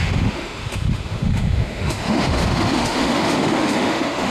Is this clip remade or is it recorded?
remade